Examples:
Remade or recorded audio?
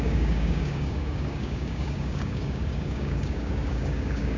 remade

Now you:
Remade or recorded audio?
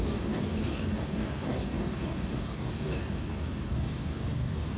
remade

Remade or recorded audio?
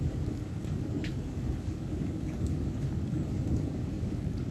remade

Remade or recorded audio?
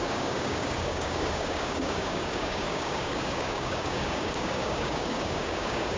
remade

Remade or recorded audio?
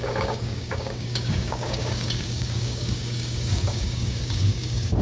remade